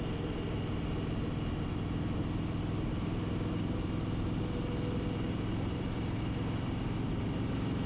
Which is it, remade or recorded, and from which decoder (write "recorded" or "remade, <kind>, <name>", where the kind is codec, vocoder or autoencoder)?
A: recorded